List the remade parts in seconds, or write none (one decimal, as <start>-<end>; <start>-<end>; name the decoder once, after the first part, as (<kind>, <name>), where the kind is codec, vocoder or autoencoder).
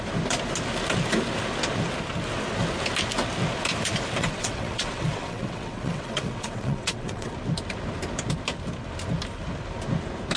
4.2-7.3 (vocoder, WaveNeXt)